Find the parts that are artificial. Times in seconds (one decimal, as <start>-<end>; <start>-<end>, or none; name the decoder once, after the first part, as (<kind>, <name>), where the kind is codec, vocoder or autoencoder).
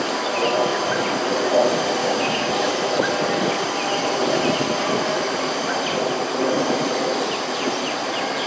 2.0-2.5 (codec, DAC)